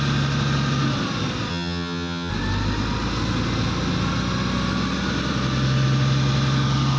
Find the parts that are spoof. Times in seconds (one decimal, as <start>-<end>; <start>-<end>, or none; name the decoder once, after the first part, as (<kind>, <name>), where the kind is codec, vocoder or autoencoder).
1.5-2.3 (vocoder, HiFi-GAN)